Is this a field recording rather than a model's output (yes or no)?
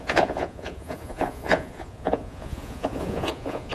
no